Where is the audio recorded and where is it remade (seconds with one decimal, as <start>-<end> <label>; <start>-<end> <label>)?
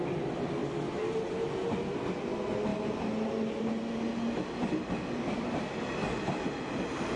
0.0-7.2 recorded